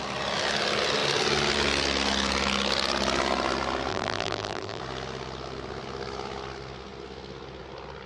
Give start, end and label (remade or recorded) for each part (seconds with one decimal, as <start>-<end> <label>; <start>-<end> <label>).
0.0-3.9 recorded; 3.9-4.8 remade; 4.8-8.1 recorded